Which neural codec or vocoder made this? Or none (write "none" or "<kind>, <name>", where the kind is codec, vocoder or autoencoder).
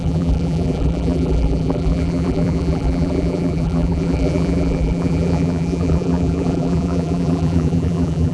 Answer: vocoder, BigVGAN v2